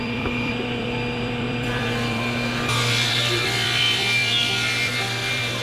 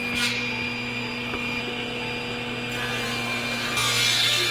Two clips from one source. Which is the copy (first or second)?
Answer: first